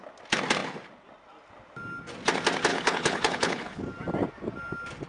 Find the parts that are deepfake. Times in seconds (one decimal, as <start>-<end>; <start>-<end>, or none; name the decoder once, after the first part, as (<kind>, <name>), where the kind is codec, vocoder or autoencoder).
2.7-3.8 (codec, HILCodec)